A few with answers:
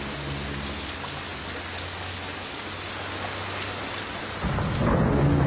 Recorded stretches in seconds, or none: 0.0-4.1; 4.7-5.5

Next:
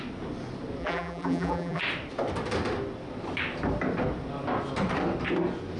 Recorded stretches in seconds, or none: 0.0-0.8; 1.8-5.8

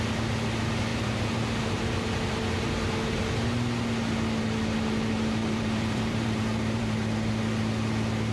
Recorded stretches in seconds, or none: 0.0-0.9; 2.4-5.4; 7.3-8.3

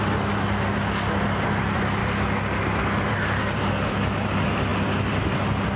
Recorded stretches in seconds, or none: 2.0-3.1

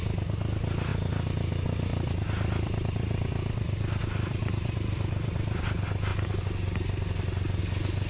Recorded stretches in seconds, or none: 0.0-0.9; 1.5-1.9; 5.6-8.1